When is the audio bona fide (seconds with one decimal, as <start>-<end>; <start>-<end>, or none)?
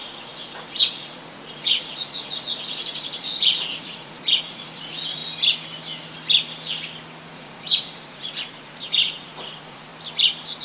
5.2-7.3; 9.9-10.6